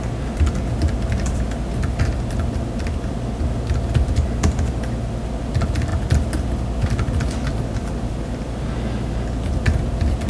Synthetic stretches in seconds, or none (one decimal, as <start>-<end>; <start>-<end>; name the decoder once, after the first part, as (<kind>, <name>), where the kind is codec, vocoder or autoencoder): none